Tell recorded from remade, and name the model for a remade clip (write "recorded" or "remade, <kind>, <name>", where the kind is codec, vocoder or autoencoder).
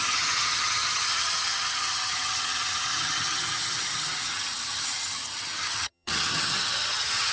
remade, vocoder, HiFi-GAN